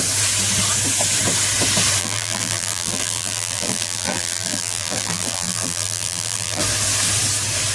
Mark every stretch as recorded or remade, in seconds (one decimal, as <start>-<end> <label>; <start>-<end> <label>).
0.0-2.0 recorded; 2.0-6.6 remade; 6.6-7.7 recorded